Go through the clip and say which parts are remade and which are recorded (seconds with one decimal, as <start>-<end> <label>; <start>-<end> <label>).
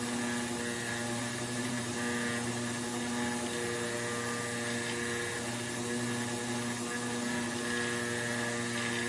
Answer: 0.0-1.2 recorded; 1.2-1.8 remade; 1.8-9.1 recorded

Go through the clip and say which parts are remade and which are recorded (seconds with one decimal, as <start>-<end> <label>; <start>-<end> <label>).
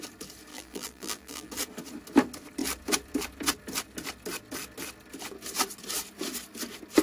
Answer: 0.0-0.5 recorded; 0.5-1.5 remade; 1.5-7.0 recorded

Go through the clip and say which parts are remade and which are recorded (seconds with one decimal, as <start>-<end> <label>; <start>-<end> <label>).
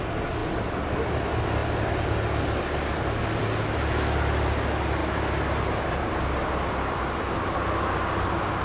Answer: 0.0-8.6 recorded